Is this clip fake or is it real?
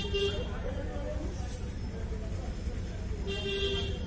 real